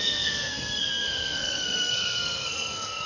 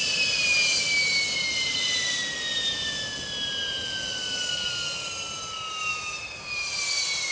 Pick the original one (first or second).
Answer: second